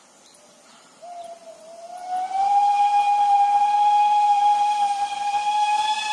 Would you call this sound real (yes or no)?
yes